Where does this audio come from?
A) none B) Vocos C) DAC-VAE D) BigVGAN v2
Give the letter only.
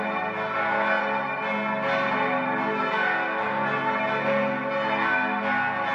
A